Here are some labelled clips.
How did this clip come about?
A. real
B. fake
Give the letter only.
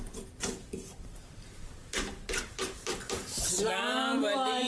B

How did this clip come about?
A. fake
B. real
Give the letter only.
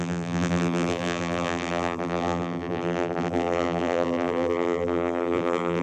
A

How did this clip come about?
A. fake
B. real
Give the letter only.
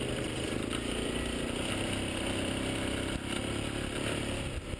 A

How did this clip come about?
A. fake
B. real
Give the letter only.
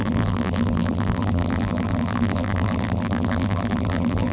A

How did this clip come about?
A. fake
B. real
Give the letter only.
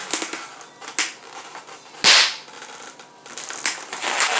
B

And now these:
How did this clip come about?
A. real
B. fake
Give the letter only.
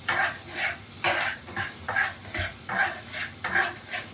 A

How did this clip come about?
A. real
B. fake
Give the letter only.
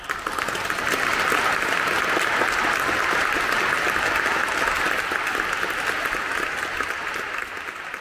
A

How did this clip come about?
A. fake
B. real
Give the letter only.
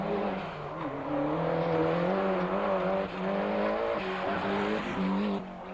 B